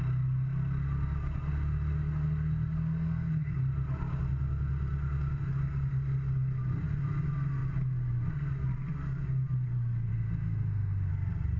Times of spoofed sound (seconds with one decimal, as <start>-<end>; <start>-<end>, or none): 10.1-11.1